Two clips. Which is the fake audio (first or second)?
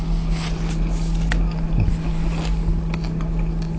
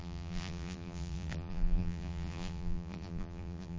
second